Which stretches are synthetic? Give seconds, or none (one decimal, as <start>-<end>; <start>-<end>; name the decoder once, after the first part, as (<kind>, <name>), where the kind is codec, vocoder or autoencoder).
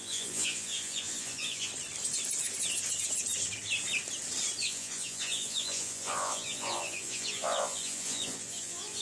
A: 0.0-1.7 (vocoder, Vocos); 4.6-9.0